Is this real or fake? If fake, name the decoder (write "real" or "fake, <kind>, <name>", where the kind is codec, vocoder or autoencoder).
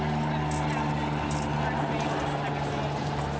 real